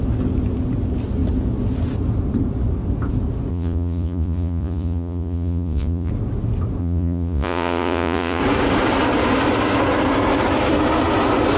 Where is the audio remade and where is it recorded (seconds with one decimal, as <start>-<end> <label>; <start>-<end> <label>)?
0.0-3.5 recorded; 3.5-6.1 remade; 6.1-6.8 recorded; 6.8-8.4 remade; 8.4-11.6 recorded